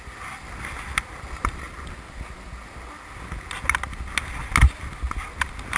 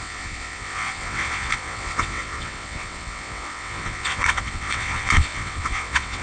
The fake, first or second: second